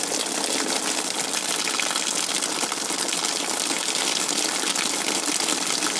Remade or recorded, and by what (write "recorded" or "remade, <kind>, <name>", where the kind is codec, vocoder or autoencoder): recorded